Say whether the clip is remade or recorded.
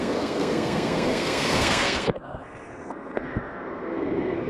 remade